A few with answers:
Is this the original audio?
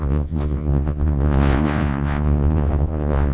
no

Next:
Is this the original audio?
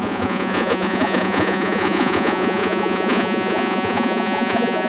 no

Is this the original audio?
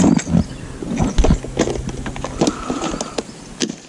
yes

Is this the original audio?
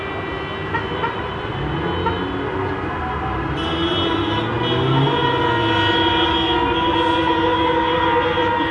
yes